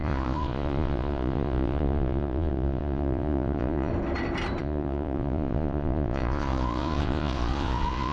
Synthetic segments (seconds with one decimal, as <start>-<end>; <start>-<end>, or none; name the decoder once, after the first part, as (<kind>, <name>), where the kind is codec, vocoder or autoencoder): 0.0-3.9 (vocoder, Vocos); 4.6-8.1